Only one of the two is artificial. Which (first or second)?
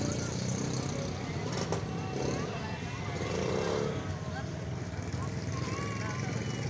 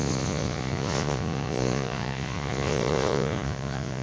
second